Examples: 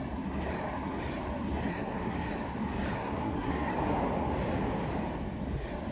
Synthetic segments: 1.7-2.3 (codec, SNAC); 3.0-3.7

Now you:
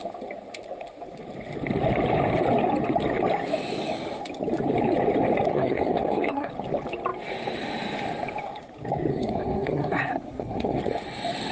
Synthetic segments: 5.5-6.5 (codec, SNAC); 9.1-10.8

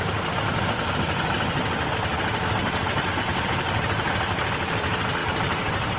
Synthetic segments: 0.0-6.0 (vocoder, BigVGAN v2)

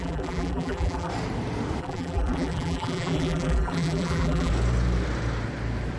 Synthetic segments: 0.0-1.1 (vocoder, BigVGAN v2); 1.8-4.5